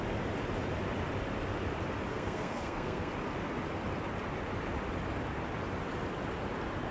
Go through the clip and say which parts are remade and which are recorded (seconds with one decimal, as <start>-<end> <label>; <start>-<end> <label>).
0.0-2.1 recorded; 2.1-3.1 remade; 3.1-6.9 recorded

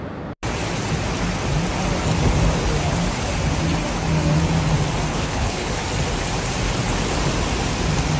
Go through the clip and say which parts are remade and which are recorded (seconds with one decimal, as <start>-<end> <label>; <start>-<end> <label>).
0.0-5.1 recorded; 5.1-5.7 remade; 5.7-8.2 recorded

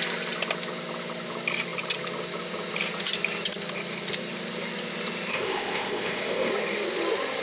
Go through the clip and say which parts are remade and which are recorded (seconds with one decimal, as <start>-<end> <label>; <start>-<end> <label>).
0.0-5.3 recorded; 5.3-6.5 remade; 6.5-7.4 recorded

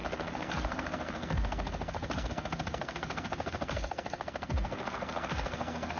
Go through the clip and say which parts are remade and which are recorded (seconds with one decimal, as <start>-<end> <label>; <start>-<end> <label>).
0.0-6.0 remade

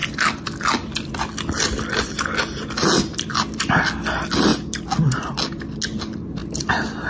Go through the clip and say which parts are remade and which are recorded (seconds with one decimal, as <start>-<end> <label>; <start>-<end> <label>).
0.0-7.1 recorded

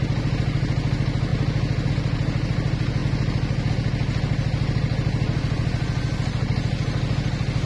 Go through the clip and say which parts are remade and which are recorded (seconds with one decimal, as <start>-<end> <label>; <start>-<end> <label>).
0.0-7.7 recorded